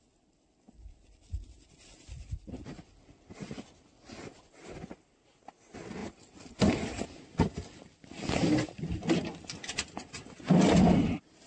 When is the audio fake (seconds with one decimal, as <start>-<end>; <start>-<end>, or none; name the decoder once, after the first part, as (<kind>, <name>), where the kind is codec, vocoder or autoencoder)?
none